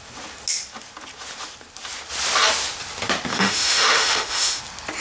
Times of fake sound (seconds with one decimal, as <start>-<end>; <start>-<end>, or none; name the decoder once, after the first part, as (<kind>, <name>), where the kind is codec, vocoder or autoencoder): 3.3-4.6 (autoencoder, DAC-VAE)